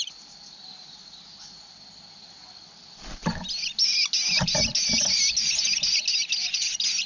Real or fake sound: real